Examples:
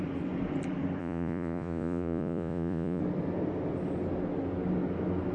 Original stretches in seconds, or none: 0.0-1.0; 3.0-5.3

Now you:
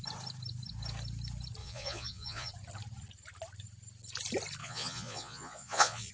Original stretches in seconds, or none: 0.0-1.6; 2.5-4.6